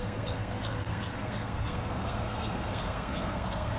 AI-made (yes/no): yes